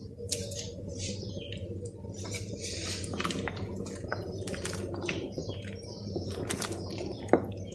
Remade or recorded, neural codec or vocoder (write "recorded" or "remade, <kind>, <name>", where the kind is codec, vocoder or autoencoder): remade, vocoder, BigVGAN v2